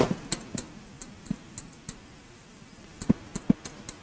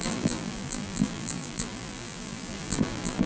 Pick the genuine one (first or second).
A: first